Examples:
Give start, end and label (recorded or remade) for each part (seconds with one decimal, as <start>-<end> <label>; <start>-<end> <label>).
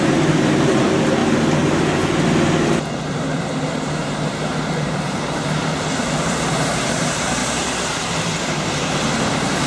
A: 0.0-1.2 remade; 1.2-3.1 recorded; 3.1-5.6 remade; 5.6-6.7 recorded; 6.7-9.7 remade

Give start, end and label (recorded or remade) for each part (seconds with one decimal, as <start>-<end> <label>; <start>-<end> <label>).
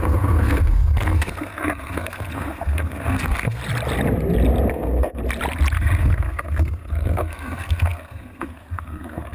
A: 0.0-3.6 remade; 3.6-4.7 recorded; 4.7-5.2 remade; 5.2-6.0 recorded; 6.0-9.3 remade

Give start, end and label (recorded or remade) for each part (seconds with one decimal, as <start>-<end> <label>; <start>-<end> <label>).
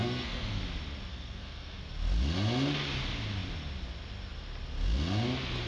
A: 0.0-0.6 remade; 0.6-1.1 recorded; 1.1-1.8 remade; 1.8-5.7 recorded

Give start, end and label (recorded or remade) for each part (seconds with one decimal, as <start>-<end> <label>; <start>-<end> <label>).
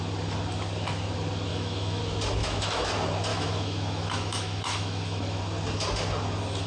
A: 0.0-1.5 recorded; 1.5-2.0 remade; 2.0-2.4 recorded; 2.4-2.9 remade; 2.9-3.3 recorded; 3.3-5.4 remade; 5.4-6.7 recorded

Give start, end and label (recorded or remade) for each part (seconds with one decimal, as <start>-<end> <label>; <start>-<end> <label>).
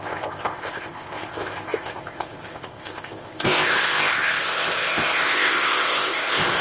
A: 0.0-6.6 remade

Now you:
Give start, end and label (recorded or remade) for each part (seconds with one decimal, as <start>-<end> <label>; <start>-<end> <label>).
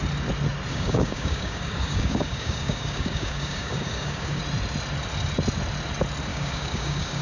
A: 0.0-0.7 recorded; 0.7-4.4 remade; 4.4-6.3 recorded; 6.3-7.2 remade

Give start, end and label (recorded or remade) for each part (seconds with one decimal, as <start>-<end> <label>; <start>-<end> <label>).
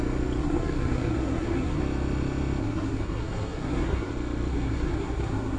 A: 0.0-0.4 recorded; 0.4-1.8 remade; 1.8-2.6 recorded; 2.6-4.1 remade; 4.1-4.5 recorded; 4.5-5.6 remade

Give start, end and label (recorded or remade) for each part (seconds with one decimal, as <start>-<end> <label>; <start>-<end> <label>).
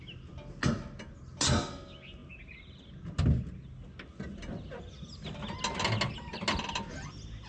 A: 0.0-7.5 recorded